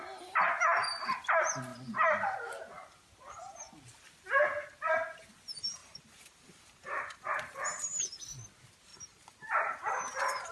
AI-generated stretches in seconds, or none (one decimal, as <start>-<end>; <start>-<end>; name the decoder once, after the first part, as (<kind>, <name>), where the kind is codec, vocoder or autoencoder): 5.8-7.4 (vocoder, BigVGAN v2); 8.9-10.5